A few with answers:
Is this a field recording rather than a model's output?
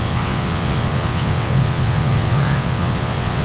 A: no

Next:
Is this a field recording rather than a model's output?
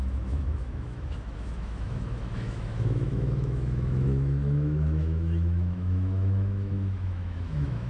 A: no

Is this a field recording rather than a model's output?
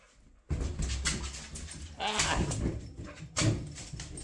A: yes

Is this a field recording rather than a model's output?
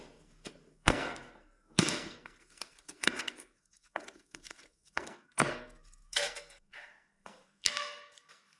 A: no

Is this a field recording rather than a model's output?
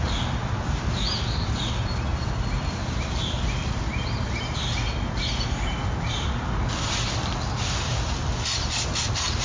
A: yes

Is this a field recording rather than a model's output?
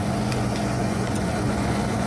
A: no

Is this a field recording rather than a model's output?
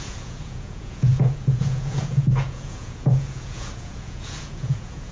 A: no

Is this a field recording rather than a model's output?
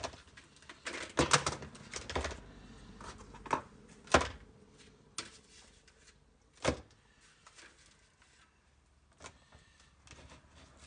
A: yes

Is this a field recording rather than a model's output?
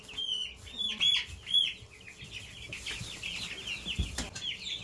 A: yes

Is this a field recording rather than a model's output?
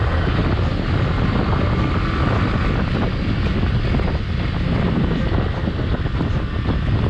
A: yes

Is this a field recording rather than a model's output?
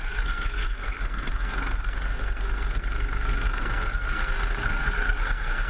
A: no